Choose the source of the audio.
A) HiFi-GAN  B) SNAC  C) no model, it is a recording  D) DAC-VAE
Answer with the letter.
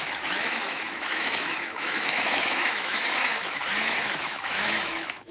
D